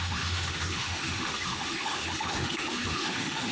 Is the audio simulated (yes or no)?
yes